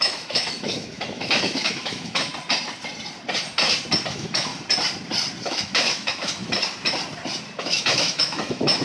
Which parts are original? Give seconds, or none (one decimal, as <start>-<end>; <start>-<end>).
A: 2.3-4.1; 4.5-5.4; 6.4-7.6